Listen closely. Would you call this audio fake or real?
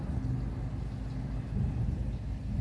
real